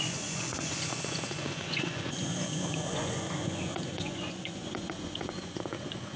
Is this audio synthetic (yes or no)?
yes